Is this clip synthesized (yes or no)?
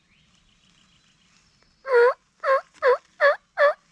no